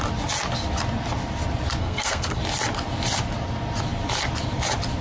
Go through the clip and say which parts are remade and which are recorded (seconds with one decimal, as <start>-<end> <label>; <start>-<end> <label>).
0.0-1.8 recorded; 1.8-2.4 remade; 2.4-5.0 recorded